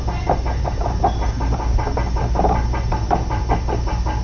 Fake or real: real